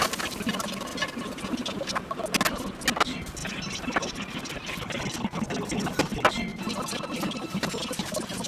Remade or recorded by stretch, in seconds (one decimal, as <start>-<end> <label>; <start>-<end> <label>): 0.0-0.9 recorded; 0.9-2.0 remade; 2.0-3.4 recorded; 3.4-5.0 remade; 5.0-6.5 recorded; 6.5-8.5 remade